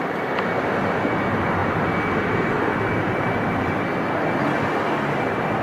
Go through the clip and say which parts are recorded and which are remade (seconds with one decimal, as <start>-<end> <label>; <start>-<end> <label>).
0.0-5.6 recorded